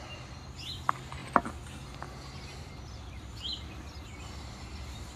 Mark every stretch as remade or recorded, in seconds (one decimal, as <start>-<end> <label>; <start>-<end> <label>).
0.0-5.2 recorded